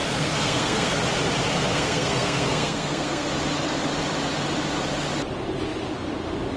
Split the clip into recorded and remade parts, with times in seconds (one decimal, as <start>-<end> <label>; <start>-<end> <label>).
0.0-1.0 remade; 1.0-1.7 recorded; 1.7-3.3 remade; 3.3-6.6 recorded